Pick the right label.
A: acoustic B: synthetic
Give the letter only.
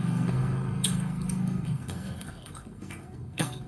B